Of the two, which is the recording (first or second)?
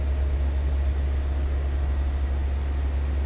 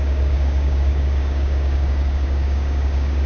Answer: first